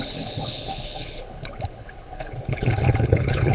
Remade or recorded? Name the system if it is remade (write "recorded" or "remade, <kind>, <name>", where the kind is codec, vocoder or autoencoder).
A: remade, codec, HILCodec